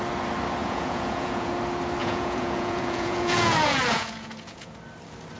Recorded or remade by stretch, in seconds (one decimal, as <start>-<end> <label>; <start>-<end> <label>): 0.0-0.6 recorded; 0.6-1.5 remade; 1.5-2.0 recorded; 2.0-4.8 remade; 4.8-5.4 recorded